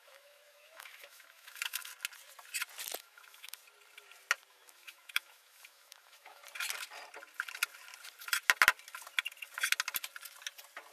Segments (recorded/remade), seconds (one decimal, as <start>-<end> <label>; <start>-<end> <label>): 0.0-1.9 remade; 1.9-3.0 recorded; 3.0-3.6 remade; 3.6-4.5 recorded; 4.5-6.4 remade; 6.4-10.9 recorded